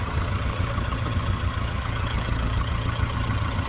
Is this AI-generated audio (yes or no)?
yes